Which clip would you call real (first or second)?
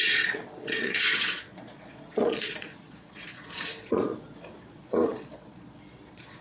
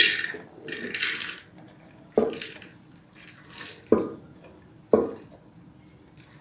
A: second